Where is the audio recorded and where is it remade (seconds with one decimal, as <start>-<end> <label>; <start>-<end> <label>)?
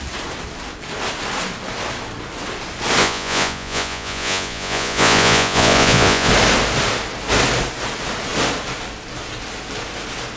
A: 0.0-3.0 recorded; 3.0-6.3 remade; 6.3-10.4 recorded